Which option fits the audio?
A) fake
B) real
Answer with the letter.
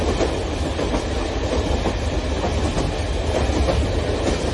B